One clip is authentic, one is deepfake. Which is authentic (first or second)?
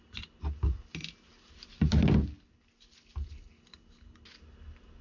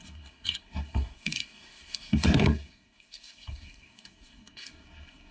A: first